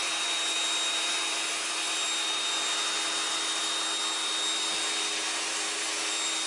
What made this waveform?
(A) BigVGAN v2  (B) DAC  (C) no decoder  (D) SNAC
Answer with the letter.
C